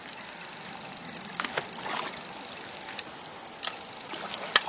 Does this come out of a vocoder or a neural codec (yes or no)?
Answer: no